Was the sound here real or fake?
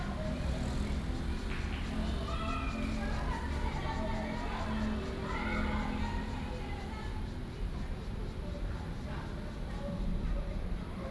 real